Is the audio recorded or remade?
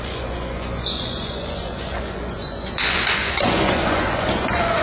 remade